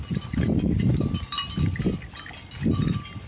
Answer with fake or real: fake